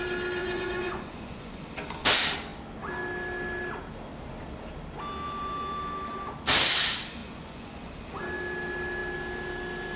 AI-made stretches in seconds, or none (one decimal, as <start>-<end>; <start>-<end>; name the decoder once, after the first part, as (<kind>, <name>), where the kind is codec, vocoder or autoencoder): 0.4-1.6 (vocoder, Vocos); 7.2-7.9